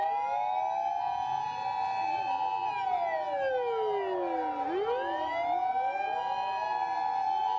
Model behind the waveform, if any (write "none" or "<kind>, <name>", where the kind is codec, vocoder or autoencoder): none